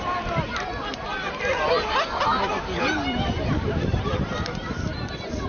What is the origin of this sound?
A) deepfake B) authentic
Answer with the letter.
A